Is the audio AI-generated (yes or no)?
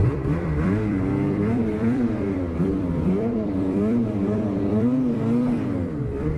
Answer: yes